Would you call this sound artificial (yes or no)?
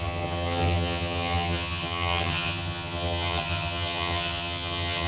yes